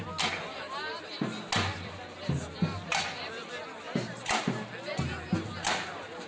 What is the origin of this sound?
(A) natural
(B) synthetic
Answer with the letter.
A